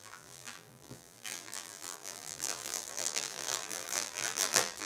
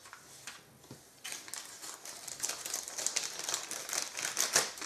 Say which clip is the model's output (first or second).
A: first